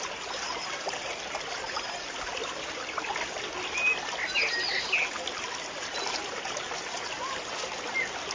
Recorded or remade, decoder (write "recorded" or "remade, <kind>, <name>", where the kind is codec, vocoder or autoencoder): recorded